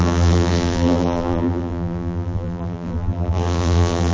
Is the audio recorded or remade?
remade